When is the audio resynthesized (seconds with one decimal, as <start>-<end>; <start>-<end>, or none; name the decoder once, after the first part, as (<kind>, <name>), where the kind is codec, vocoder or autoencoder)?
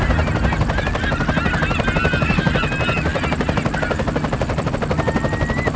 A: none